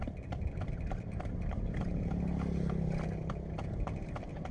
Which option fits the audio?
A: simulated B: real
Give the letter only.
B